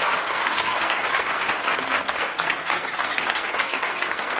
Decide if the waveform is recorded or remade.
remade